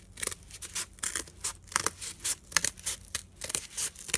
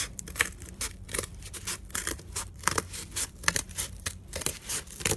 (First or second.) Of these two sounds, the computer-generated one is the second